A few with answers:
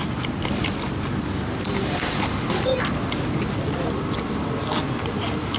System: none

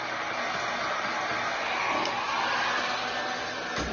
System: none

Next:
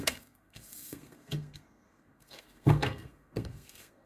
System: codec, SNAC